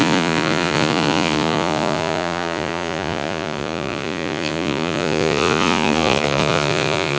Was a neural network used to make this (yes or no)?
yes